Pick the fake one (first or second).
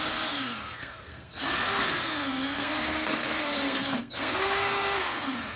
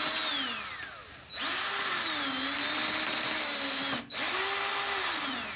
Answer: first